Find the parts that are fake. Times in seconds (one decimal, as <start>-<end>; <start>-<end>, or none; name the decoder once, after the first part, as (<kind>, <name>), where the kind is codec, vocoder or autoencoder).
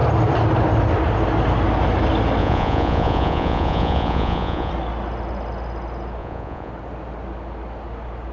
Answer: 2.4-4.7 (vocoder, Vocos); 6.2-6.7